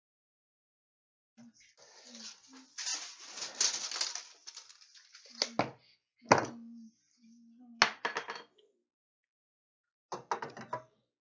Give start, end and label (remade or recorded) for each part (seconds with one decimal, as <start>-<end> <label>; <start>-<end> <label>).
0.0-11.2 recorded